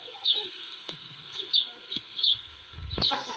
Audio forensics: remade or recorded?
remade